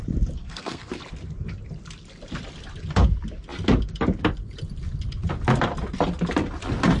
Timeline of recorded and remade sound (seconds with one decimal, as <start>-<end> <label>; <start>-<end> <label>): 0.0-0.4 recorded; 0.4-0.9 remade; 0.9-7.0 recorded